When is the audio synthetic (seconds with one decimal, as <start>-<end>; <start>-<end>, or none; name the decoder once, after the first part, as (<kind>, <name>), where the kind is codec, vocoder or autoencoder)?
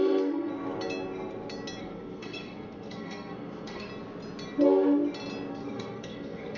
0.0-0.5 (codec, SNAC); 1.8-3.9; 5.5-6.6